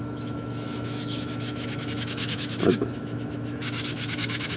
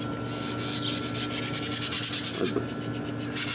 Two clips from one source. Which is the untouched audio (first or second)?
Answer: second